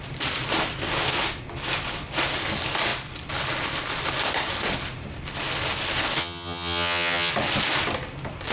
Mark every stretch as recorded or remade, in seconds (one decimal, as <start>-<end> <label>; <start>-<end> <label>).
0.0-6.2 recorded; 6.2-7.3 remade; 7.3-8.5 recorded